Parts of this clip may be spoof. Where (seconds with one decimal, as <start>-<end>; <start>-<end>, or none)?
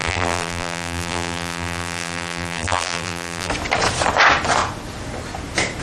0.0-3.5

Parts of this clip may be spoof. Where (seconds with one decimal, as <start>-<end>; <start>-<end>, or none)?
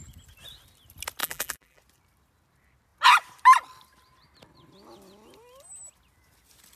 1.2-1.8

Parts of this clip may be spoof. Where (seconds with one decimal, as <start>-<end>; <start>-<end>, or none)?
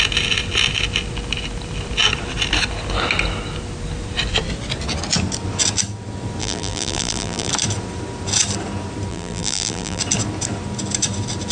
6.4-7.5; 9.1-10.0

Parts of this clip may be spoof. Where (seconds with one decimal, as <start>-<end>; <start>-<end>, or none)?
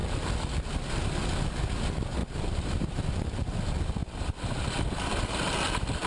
2.2-3.1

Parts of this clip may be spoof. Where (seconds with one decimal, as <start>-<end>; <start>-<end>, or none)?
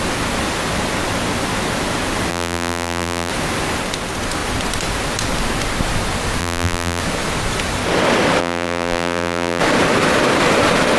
2.3-3.3; 6.4-7.0; 8.4-9.6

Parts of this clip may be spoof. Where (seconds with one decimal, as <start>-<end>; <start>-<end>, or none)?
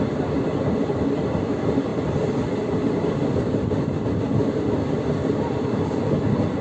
1.9-3.3; 5.2-6.6